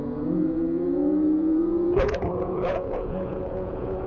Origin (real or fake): fake